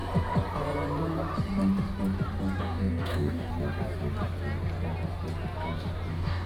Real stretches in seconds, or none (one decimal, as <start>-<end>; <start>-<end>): 0.0-2.6; 3.5-6.1